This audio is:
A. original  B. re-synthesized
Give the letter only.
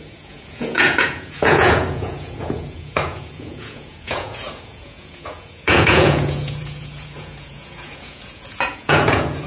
B